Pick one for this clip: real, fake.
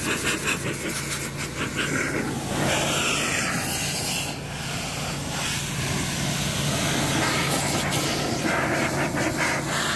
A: real